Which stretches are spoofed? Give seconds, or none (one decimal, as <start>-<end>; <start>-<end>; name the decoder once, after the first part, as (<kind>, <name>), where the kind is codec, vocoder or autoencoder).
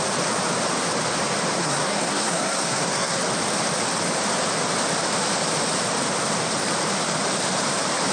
1.6-3.2 (codec, SNAC)